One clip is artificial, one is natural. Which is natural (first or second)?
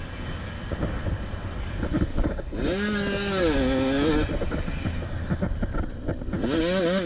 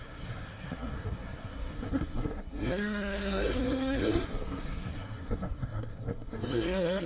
first